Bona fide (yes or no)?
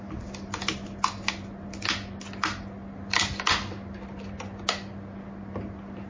yes